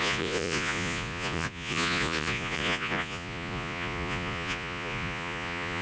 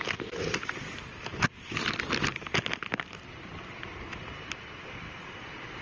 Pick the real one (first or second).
second